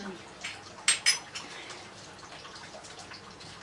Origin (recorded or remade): recorded